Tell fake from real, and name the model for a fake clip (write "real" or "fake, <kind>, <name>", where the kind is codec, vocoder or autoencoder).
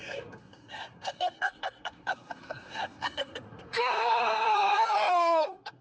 fake, codec, SNAC